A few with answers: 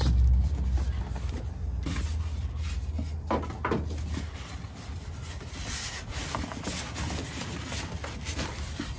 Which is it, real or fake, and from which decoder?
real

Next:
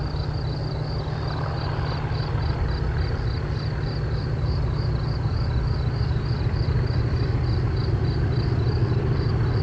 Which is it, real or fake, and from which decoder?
real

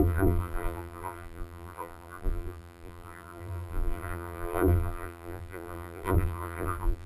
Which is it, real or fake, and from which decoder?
fake, vocoder, BigVGAN v2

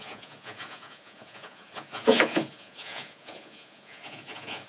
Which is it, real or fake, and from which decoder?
fake, vocoder, Vocos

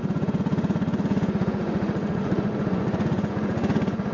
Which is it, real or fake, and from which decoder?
fake, vocoder, Vocos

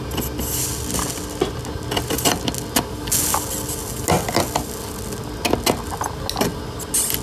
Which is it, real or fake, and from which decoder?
real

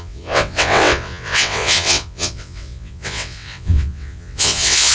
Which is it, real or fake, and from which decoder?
fake, vocoder, WaveNeXt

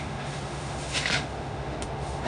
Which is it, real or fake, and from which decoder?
fake, autoencoder, DAC-VAE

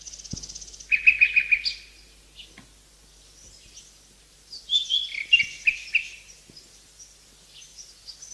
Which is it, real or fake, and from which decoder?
real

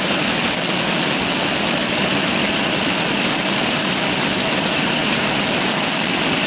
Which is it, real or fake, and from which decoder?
fake, vocoder, BigVGAN v2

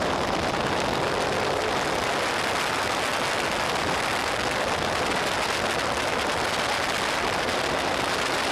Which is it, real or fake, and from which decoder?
real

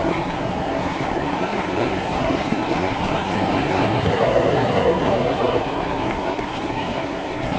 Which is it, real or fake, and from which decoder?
fake, codec, SNAC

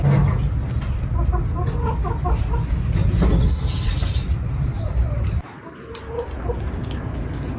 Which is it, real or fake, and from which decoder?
real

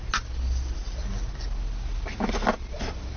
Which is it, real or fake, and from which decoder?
real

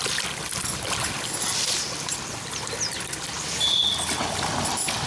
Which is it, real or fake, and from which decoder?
real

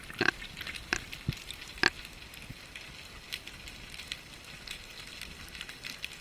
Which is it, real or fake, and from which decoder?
real